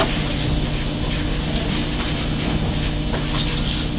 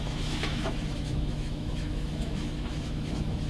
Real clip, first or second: first